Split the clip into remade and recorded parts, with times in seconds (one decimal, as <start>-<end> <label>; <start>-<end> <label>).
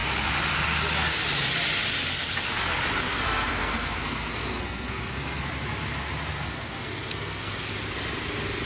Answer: 0.0-3.1 recorded; 3.1-5.5 remade; 5.5-6.3 recorded; 6.3-7.7 remade; 7.7-8.7 recorded